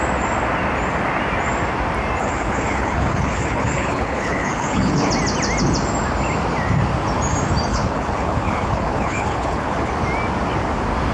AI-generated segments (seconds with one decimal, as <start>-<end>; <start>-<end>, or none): 2.2-5.1; 7.7-9.9